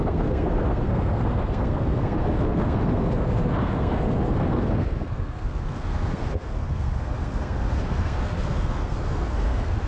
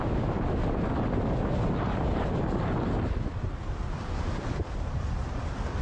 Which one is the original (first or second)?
second